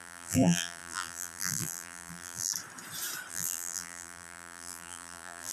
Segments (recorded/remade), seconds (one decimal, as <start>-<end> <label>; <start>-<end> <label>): 0.0-2.5 remade; 2.5-3.3 recorded; 3.3-5.5 remade